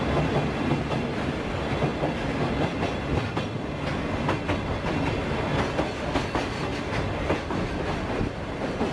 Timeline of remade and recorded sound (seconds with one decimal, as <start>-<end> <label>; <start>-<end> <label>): 0.0-8.9 recorded